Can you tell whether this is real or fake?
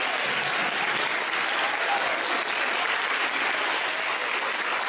real